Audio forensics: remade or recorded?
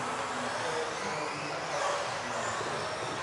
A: recorded